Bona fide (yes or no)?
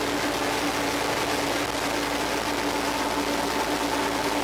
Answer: yes